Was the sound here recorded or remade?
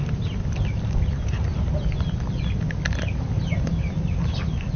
recorded